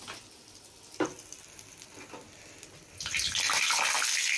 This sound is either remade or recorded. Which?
recorded